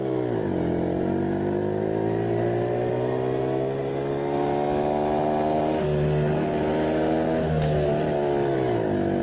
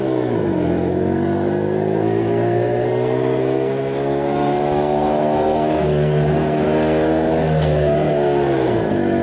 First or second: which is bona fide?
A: first